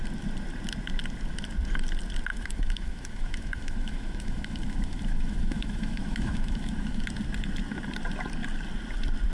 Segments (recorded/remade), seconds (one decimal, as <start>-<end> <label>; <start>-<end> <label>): 0.0-2.3 recorded; 2.3-7.0 remade; 7.0-9.3 recorded